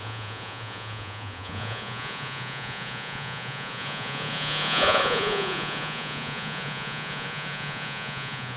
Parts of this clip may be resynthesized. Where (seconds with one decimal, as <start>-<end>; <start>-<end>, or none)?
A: 0.0-8.6